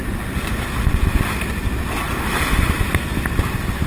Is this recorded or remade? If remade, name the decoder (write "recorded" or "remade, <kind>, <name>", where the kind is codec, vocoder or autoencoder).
recorded